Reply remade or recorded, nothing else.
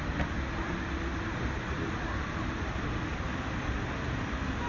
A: recorded